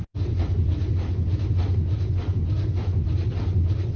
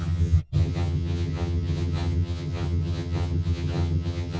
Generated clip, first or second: second